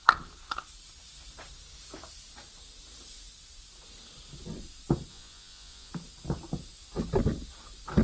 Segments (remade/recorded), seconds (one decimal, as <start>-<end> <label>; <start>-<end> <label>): 0.0-5.1 recorded; 5.1-5.9 remade; 5.9-8.0 recorded